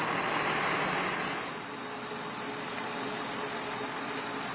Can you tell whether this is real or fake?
real